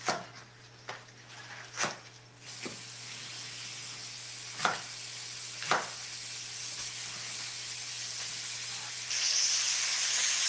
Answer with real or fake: real